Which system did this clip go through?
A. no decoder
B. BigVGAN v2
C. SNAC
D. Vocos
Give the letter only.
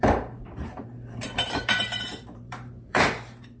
B